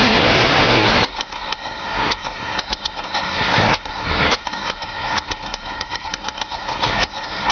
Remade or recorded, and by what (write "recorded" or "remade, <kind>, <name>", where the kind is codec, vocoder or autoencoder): remade, codec, SNAC